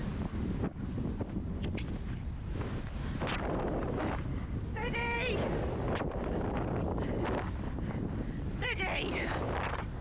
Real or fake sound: real